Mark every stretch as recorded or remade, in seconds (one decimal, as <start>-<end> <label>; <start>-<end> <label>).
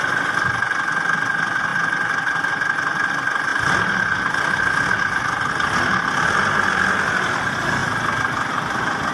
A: 0.0-9.1 recorded